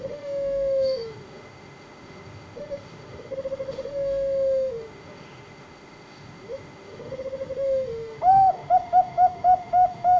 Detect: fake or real fake